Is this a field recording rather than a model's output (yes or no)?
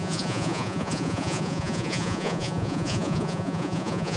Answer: no